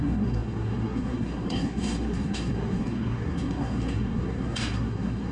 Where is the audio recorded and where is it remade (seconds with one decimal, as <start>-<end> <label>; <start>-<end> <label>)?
0.0-5.3 remade